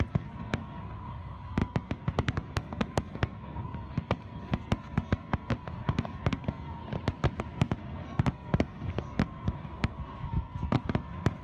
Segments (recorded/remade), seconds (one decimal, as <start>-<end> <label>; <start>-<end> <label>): 0.0-6.8 remade; 6.8-7.4 recorded; 7.4-11.4 remade